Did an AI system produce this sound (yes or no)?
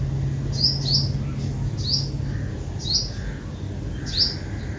no